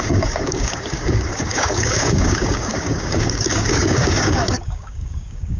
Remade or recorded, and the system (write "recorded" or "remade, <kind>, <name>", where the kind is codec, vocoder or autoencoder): remade, codec, DAC